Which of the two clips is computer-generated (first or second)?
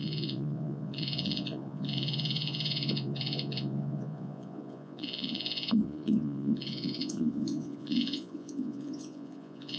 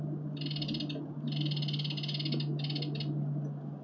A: first